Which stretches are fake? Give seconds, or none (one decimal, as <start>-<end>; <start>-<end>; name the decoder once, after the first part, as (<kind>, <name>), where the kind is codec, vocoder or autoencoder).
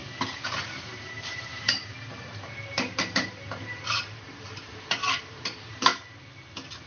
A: 0.0-5.9 (vocoder, BigVGAN v2)